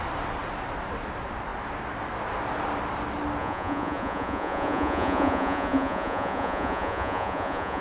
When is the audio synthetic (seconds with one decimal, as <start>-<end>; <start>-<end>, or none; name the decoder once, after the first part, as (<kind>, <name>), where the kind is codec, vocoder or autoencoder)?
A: 3.4-7.8 (vocoder, Vocos)